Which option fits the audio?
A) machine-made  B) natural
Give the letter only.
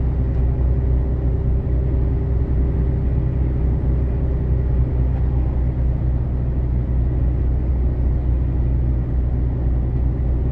B